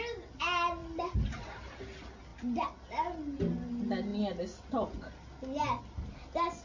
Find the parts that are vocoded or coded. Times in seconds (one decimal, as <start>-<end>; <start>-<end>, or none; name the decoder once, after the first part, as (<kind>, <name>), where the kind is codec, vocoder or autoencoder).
0.8-1.4 (vocoder, BigVGAN v2)